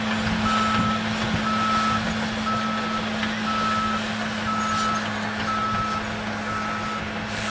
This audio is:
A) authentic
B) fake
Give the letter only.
A